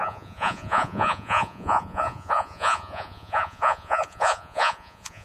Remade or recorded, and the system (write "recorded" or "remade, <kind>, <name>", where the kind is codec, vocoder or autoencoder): remade, vocoder, Vocos